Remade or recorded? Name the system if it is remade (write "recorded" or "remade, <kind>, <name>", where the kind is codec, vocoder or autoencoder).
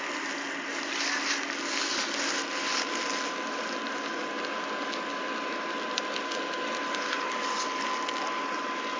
recorded